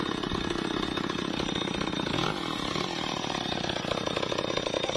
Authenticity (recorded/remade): recorded